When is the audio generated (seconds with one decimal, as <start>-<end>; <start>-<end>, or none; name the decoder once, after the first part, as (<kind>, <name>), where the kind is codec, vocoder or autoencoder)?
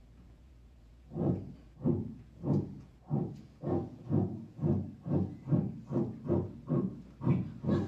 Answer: 0.0-4.7 (vocoder, Vocos)